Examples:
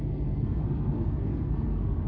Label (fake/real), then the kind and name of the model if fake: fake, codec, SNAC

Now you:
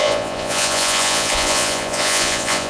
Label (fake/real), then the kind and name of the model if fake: fake, vocoder, Vocos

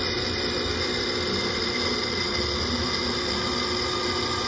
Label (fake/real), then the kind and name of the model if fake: real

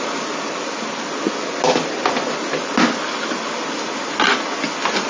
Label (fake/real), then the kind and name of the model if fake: real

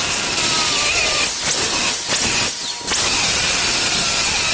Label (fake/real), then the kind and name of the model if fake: real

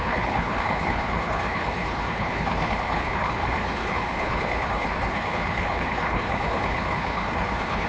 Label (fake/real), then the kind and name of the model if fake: fake, codec, HILCodec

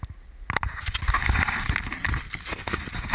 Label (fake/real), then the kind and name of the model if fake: real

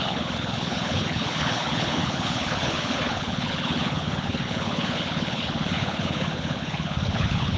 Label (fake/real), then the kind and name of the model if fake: fake, codec, HILCodec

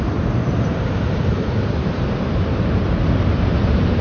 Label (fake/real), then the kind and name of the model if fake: fake, vocoder, BigVGAN v2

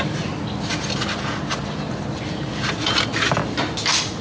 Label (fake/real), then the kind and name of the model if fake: real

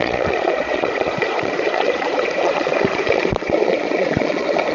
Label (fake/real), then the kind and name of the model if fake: fake, vocoder, Vocos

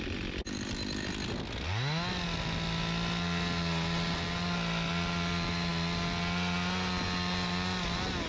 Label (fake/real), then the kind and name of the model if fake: real